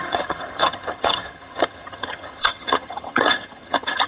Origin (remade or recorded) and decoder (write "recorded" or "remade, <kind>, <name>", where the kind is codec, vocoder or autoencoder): remade, vocoder, HiFi-GAN